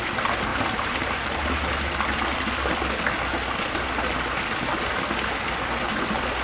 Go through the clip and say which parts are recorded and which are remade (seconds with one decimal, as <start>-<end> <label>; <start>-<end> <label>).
0.0-0.5 recorded; 0.5-1.4 remade; 1.4-6.4 recorded